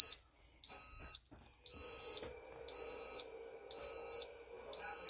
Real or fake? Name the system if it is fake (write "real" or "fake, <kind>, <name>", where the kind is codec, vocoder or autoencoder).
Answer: real